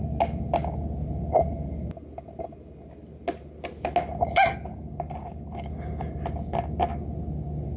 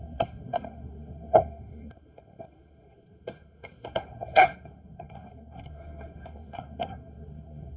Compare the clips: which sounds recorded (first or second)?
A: first